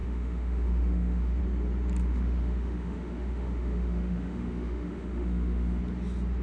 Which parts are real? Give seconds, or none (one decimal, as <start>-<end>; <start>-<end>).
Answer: 1.4-2.0; 5.8-6.4

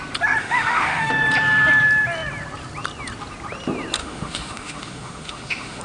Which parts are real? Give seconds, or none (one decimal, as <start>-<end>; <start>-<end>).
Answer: 0.0-0.4; 1.1-4.0

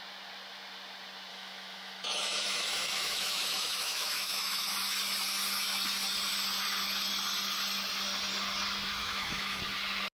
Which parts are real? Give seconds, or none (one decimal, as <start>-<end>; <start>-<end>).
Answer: 0.0-1.3; 4.7-9.0; 9.6-10.1

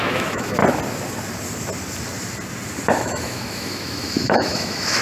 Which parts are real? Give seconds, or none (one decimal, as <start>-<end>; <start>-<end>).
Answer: 0.6-2.9

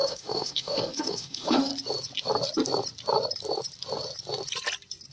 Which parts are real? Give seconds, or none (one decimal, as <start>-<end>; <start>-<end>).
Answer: 1.7-5.1